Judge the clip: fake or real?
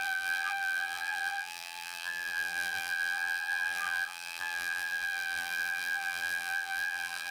fake